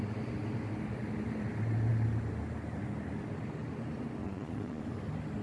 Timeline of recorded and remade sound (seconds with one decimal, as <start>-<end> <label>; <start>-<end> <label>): 0.0-4.2 recorded; 4.2-4.8 remade; 4.8-5.4 recorded